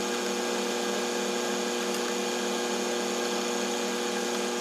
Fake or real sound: real